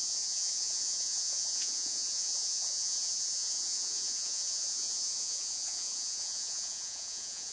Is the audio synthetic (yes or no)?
yes